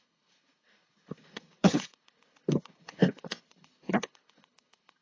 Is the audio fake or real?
fake